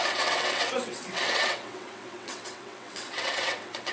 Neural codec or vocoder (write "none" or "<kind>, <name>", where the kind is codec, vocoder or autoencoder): vocoder, WaveNeXt